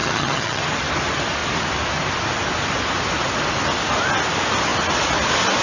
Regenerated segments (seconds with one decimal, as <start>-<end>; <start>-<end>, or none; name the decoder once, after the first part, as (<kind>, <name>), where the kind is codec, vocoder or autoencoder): 0.0-0.6 (vocoder, HiFi-GAN)